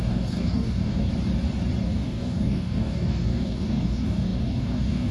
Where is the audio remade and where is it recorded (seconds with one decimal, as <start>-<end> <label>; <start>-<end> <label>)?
0.0-1.1 remade; 1.1-1.8 recorded; 1.8-5.1 remade